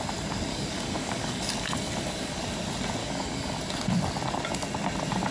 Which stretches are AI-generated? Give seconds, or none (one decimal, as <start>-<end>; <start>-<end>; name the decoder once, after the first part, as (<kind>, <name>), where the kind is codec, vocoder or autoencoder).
0.5-2.4 (codec, DAC); 3.0-3.6